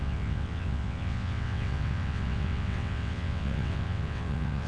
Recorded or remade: remade